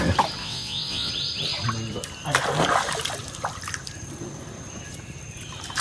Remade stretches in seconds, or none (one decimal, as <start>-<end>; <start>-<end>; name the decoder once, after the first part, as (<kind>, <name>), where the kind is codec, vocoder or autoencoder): 0.4-1.1 (vocoder, WaveNeXt)